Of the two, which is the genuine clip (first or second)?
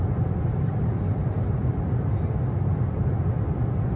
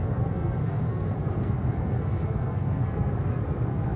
first